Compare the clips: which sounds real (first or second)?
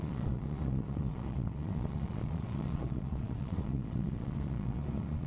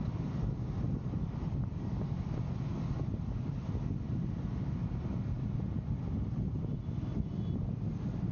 second